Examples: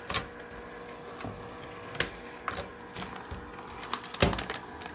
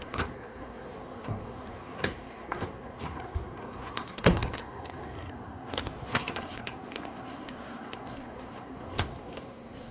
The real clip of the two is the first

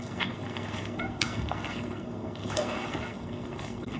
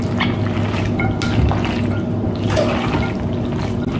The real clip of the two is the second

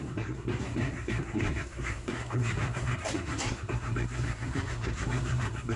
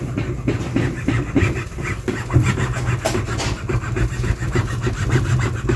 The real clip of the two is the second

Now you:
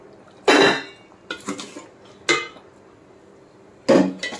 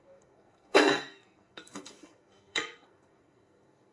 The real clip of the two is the first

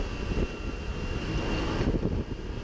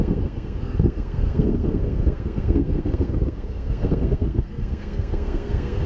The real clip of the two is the first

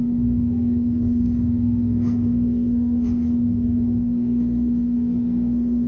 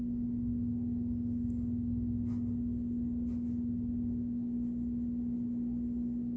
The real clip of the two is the second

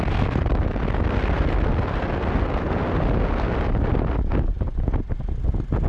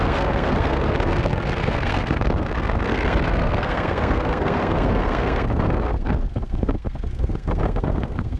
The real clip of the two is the first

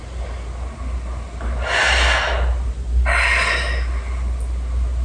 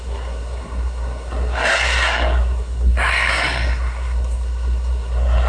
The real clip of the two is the first